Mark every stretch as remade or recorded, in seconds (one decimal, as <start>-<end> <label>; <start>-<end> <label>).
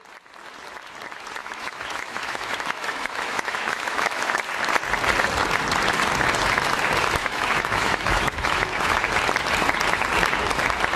0.0-1.4 recorded; 1.4-4.4 remade; 4.4-7.2 recorded; 7.2-9.0 remade; 9.0-11.0 recorded